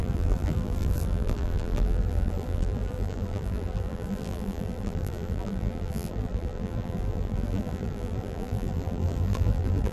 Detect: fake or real fake